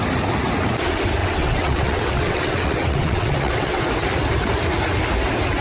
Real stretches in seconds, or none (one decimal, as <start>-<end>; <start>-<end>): 0.0-1.2; 3.8-5.6